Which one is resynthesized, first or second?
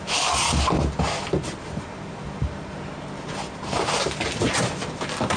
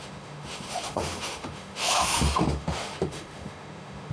second